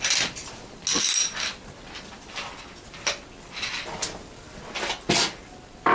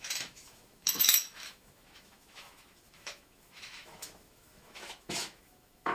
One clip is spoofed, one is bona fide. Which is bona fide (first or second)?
first